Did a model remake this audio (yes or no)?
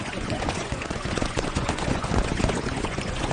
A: yes